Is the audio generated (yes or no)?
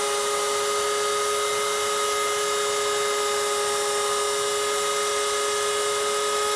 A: no